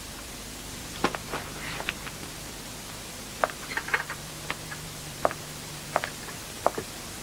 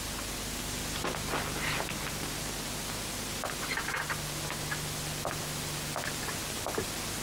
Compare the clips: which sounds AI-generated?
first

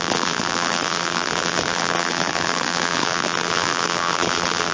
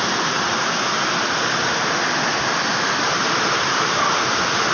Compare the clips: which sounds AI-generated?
first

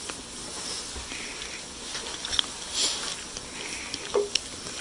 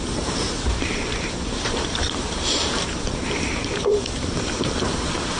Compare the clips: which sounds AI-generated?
second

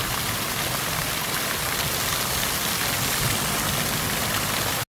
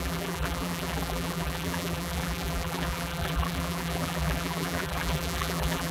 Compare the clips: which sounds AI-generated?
second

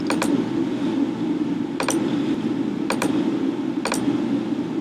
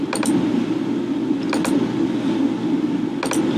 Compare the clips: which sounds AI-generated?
first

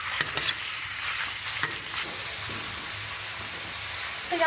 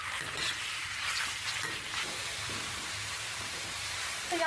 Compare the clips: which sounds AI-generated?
second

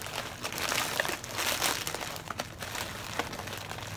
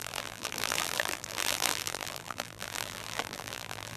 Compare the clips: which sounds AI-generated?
second